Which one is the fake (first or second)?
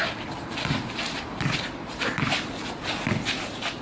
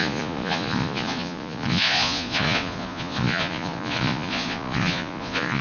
second